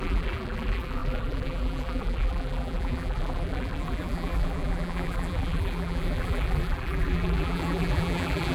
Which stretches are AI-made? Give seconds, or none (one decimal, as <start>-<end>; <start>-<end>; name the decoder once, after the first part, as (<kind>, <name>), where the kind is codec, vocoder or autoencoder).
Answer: 0.0-8.5 (vocoder, BigVGAN v2)